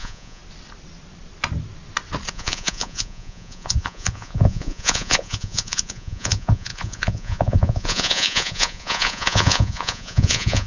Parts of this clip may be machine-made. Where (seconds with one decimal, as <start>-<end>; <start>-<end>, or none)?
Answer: 0.0-0.4; 2.3-10.7